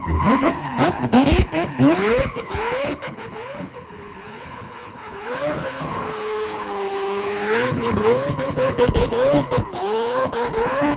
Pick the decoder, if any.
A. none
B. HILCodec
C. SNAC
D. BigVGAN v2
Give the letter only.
B